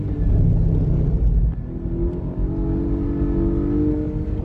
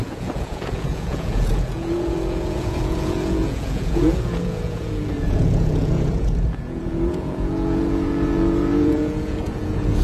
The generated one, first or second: second